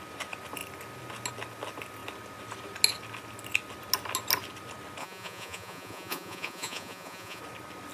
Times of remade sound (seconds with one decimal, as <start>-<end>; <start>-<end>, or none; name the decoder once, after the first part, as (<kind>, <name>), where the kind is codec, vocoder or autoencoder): 5.0-7.4 (vocoder, Vocos)